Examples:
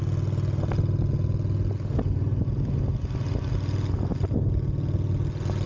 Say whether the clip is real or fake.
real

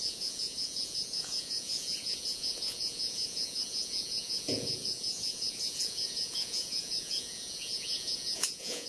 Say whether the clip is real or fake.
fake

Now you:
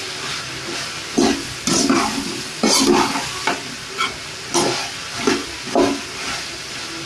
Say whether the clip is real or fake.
real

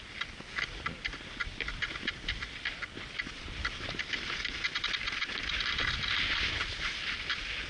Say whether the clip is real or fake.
real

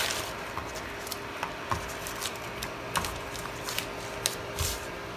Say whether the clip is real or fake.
real